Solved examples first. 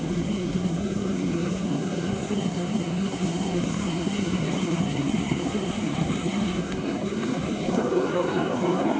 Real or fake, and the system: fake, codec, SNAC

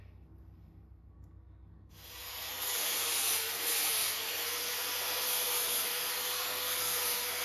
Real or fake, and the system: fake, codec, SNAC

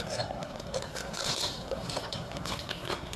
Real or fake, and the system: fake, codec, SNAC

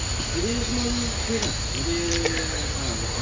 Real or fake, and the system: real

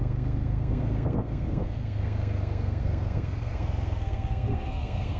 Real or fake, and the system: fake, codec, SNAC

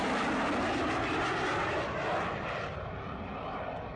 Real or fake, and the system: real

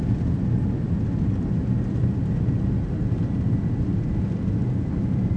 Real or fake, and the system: real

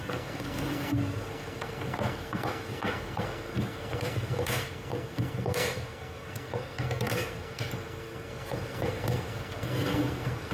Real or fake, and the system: fake, codec, SNAC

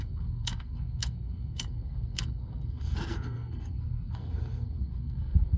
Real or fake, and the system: fake, codec, SNAC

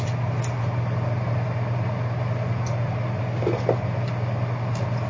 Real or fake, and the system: real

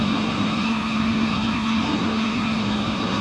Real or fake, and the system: fake, codec, SNAC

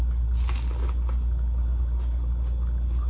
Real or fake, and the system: real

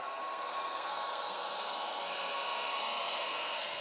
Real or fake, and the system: fake, codec, SNAC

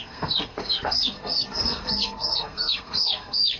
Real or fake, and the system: fake, codec, SNAC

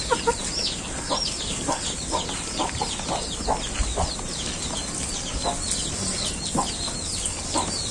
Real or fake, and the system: real